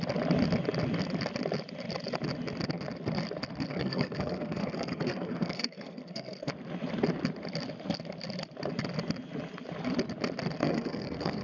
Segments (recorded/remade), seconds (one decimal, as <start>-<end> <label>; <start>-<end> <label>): 0.0-3.7 recorded; 3.7-6.5 remade; 6.5-10.6 recorded; 10.6-11.4 remade